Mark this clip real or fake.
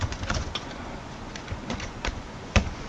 fake